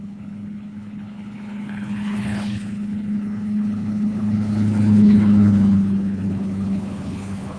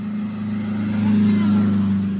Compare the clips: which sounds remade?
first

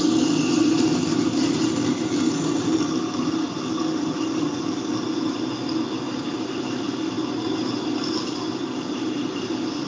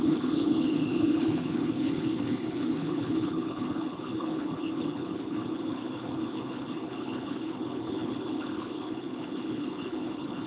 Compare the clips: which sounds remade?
second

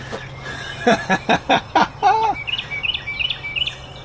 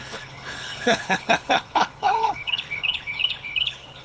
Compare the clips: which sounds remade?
second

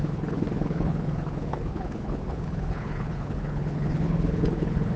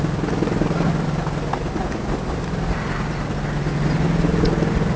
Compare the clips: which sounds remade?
first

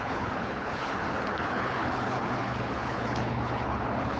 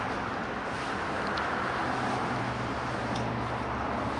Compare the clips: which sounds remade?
first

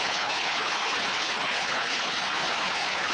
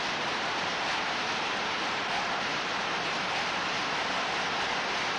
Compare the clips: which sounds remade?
first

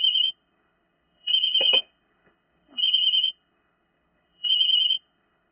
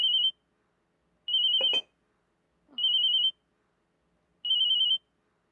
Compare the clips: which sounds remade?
first